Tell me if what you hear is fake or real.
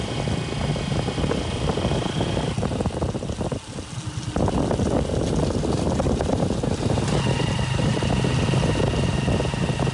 real